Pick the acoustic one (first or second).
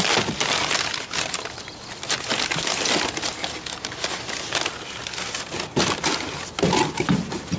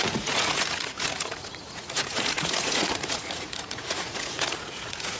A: first